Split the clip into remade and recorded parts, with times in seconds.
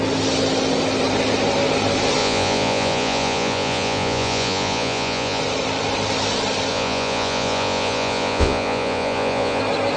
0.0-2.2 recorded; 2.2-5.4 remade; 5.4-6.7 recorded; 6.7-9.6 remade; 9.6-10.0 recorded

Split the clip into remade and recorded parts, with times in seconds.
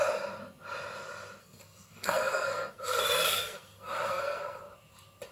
0.0-1.4 recorded; 1.4-4.6 remade; 4.6-5.3 recorded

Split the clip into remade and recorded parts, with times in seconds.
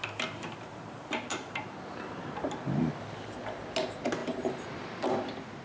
0.0-2.9 remade; 2.9-5.6 recorded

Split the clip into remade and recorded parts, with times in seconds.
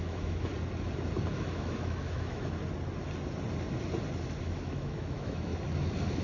0.0-0.5 remade; 0.5-1.3 recorded; 1.3-2.6 remade; 2.6-4.4 recorded; 4.4-5.5 remade; 5.5-6.2 recorded